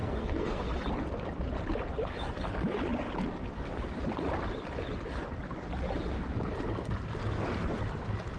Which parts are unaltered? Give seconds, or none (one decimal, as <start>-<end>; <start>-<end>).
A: 0.7-8.4